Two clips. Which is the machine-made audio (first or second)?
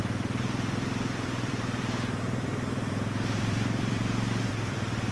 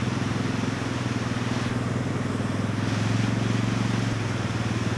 first